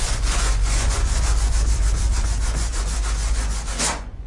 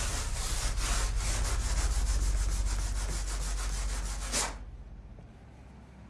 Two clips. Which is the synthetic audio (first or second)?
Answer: first